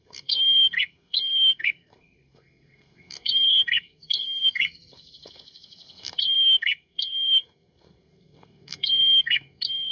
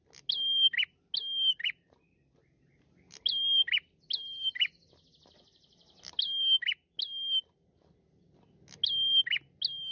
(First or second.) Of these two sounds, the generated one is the first